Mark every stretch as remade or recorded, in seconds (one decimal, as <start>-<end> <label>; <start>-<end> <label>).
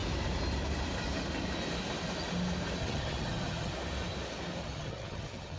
0.0-2.8 recorded; 2.8-3.7 remade; 3.7-4.6 recorded; 4.6-5.6 remade